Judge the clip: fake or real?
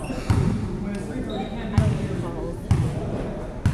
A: real